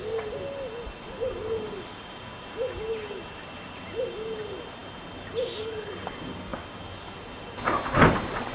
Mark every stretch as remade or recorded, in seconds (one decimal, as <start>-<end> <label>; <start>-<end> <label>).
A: 0.0-8.5 recorded